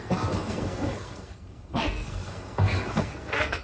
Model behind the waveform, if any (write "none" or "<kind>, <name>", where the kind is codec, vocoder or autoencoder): codec, SNAC